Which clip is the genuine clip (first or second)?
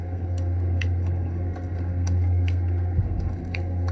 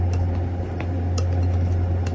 second